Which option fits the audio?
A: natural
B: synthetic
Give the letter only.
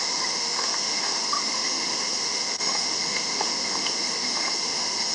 B